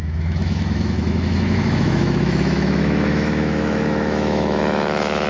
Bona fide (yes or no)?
no